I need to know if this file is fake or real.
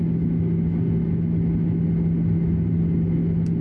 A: real